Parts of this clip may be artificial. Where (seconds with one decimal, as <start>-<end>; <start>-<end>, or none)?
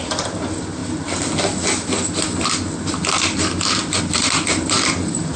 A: 0.0-0.8; 4.0-5.4